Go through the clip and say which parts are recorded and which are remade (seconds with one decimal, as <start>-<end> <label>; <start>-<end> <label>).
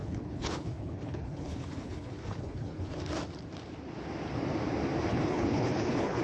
0.0-3.0 remade; 3.0-5.1 recorded; 5.1-6.2 remade